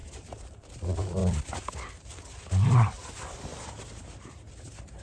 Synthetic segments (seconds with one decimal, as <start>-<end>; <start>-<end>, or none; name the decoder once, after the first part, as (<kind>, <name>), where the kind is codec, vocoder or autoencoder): 0.0-3.5 (vocoder, BigVGAN v2); 4.0-5.0